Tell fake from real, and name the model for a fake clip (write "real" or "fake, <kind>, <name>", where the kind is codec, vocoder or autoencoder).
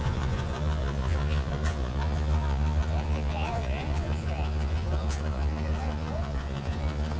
fake, vocoder, Vocos